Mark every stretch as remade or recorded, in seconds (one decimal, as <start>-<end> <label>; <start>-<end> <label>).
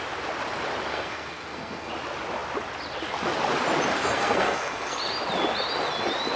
0.0-0.9 recorded; 0.9-1.9 remade; 1.9-3.9 recorded; 3.9-5.0 remade; 5.0-6.4 recorded